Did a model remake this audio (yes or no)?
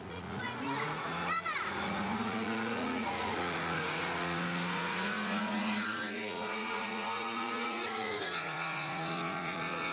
yes